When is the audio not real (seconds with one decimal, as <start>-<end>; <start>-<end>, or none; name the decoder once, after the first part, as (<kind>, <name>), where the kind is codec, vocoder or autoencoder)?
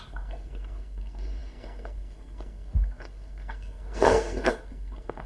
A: 0.0-5.3 (codec, SNAC)